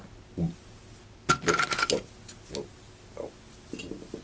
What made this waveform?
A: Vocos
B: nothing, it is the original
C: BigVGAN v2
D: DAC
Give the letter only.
B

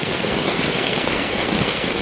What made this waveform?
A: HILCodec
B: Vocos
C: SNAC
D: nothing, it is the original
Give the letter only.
C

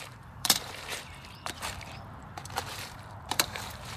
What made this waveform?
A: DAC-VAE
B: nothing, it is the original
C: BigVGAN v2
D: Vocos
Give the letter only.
C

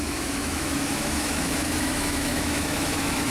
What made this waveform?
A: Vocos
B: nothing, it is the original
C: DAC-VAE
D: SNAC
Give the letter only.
C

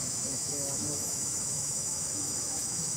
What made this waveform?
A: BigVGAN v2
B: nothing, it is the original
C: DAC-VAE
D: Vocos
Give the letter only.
C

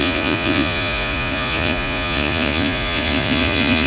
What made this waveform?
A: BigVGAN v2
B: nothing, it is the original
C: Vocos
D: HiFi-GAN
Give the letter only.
C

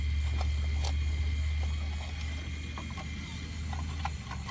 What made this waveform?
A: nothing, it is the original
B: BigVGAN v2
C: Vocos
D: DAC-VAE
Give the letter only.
A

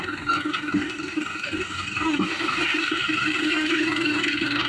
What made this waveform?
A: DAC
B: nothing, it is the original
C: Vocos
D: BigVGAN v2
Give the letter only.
A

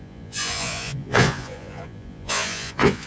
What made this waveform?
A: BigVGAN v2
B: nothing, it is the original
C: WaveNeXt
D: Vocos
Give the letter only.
D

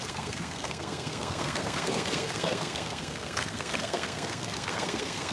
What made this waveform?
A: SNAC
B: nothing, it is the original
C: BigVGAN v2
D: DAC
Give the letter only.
A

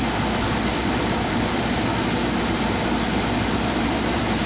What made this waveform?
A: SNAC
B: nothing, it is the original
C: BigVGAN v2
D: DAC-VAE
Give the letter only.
C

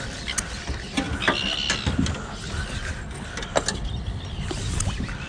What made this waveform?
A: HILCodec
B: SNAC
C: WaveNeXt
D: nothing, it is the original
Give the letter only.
D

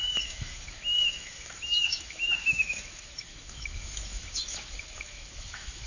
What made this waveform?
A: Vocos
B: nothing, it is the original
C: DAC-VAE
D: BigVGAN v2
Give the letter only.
C